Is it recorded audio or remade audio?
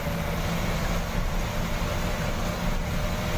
recorded